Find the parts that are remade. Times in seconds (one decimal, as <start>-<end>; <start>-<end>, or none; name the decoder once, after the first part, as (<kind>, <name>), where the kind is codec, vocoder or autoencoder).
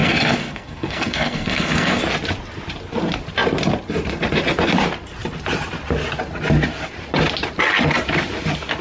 0.0-2.0 (codec, SNAC)